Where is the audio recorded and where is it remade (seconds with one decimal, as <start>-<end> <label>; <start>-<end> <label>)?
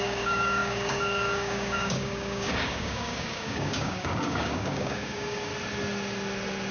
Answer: 0.0-5.5 remade; 5.5-6.7 recorded